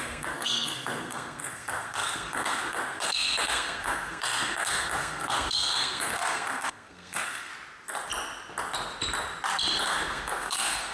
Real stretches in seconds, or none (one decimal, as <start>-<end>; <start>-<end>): 7.5-9.8